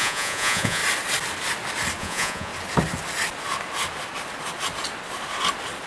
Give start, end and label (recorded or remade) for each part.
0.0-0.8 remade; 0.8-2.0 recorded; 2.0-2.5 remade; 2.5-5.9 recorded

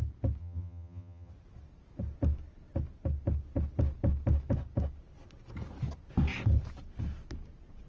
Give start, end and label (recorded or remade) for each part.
0.0-0.4 recorded; 0.4-1.3 remade; 1.3-7.9 recorded

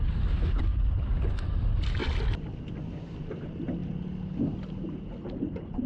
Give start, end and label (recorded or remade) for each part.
0.0-5.9 recorded

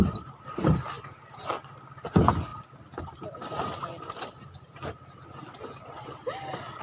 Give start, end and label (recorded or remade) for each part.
0.0-6.8 recorded

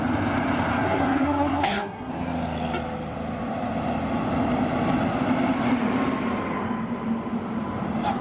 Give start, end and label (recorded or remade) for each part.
0.0-0.7 recorded; 0.7-2.1 remade; 2.1-8.2 recorded

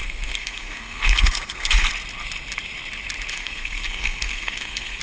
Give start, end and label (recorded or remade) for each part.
0.0-1.9 remade; 1.9-3.3 recorded; 3.3-5.0 remade

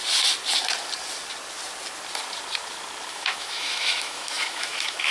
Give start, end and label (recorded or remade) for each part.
0.0-3.1 recorded; 3.1-5.1 remade